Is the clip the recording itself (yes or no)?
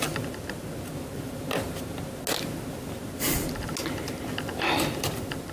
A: yes